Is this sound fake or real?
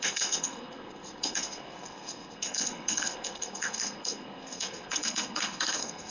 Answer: fake